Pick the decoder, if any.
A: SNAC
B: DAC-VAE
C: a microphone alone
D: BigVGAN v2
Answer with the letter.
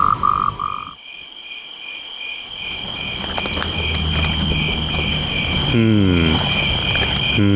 C